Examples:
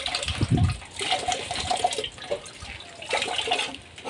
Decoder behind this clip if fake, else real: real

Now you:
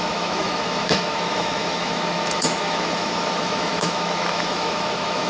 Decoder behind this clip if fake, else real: fake, autoencoder, DAC-VAE